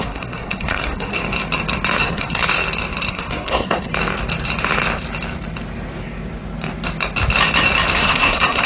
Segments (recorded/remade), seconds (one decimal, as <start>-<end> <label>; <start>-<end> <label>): 0.0-1.2 remade; 1.2-2.0 recorded; 2.0-2.4 remade; 2.4-3.1 recorded; 3.1-3.9 remade; 3.9-7.9 recorded; 7.9-8.7 remade